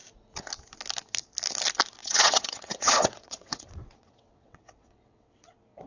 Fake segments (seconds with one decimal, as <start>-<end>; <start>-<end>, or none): 2.0-5.5